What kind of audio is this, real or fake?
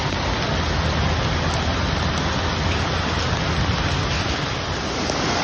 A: real